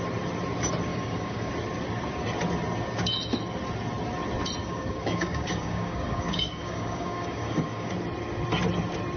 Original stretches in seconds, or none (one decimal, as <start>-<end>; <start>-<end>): 0.0-0.9; 1.5-4.6; 7.9-9.2